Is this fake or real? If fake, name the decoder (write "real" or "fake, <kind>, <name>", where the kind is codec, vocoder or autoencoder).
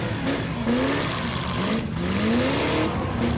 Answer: real